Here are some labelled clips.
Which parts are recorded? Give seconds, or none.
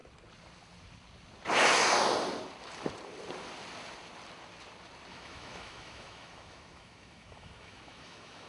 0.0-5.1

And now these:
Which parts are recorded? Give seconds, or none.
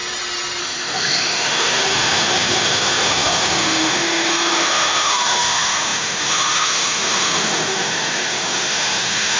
0.0-0.6